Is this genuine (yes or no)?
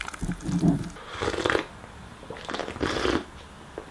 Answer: yes